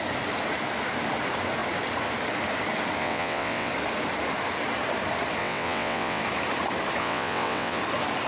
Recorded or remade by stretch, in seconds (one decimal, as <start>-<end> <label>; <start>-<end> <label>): 0.0-3.0 recorded; 3.0-3.7 remade; 3.7-5.4 recorded; 5.4-6.2 remade; 6.2-7.0 recorded; 7.0-7.8 remade; 7.8-8.3 recorded